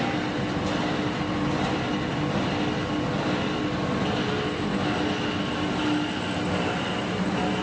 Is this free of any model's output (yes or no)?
yes